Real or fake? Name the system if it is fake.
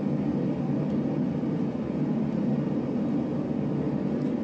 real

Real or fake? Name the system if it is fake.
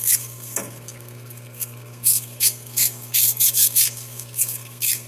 fake, codec, SNAC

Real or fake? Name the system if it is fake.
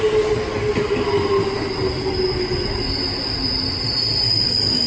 real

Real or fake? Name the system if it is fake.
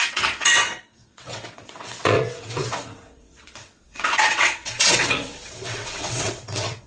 fake, vocoder, WaveNeXt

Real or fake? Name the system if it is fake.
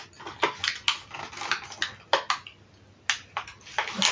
real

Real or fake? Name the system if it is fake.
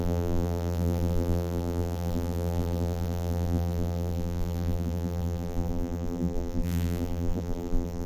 fake, vocoder, BigVGAN v2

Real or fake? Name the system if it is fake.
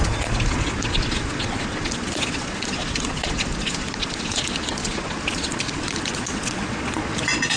fake, vocoder, Vocos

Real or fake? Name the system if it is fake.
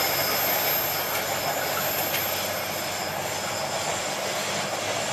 real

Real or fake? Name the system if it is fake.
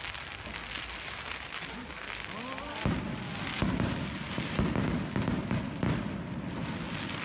real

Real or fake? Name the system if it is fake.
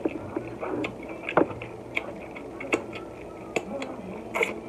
real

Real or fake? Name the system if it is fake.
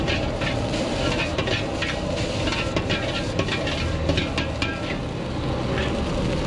real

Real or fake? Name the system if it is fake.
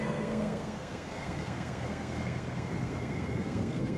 fake, codec, SNAC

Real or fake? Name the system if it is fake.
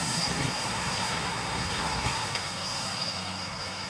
fake, codec, SNAC